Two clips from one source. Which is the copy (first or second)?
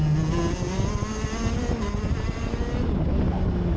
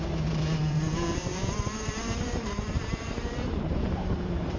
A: second